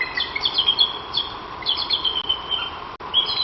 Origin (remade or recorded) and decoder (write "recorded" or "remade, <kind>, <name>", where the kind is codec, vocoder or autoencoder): recorded